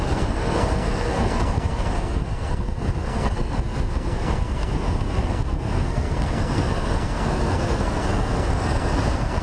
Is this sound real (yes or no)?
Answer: no